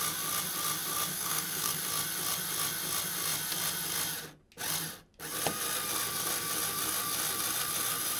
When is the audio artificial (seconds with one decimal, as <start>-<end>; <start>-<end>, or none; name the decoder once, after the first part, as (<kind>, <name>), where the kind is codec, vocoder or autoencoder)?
1.1-1.8 (codec, SNAC)